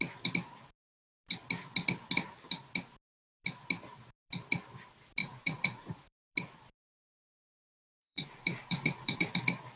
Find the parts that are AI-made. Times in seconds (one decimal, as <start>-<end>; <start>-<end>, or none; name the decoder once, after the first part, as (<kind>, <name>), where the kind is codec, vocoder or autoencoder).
5.2-5.9 (vocoder, Vocos); 8.0-9.3